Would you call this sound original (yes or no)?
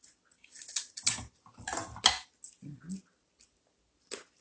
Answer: yes